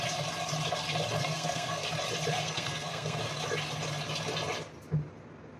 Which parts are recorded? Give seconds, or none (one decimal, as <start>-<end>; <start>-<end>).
0.0-1.2; 1.9-2.3; 3.2-5.6